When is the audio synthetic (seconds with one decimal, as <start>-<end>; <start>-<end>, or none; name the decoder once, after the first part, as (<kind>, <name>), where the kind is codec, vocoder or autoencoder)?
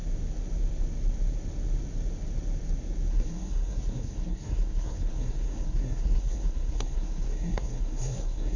3.1-8.6 (codec, SNAC)